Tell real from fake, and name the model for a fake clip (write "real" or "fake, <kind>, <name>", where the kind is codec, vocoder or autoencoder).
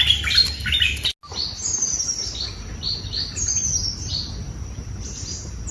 real